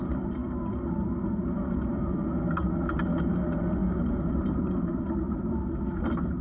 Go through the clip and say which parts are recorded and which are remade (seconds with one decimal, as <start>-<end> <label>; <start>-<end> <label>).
0.0-6.4 recorded